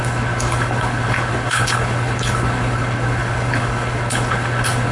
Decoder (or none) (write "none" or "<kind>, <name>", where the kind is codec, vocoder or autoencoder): codec, HILCodec